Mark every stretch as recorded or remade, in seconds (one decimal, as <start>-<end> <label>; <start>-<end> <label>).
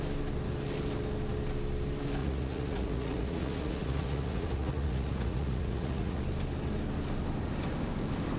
0.0-2.2 recorded; 2.2-6.2 remade; 6.2-8.4 recorded